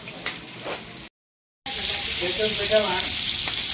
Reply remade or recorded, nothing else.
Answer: recorded